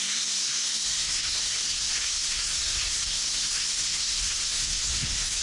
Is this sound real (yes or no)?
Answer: no